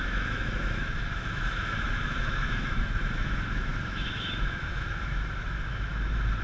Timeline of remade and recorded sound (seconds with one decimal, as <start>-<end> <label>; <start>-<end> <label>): 0.0-6.4 remade